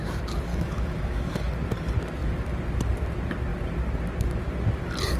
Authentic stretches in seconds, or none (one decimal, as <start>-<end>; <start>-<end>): 0.0-0.5; 1.5-5.2